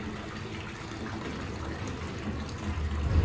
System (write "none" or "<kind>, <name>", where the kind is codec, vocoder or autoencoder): none